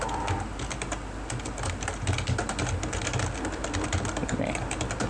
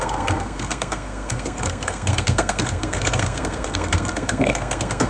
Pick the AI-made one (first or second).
second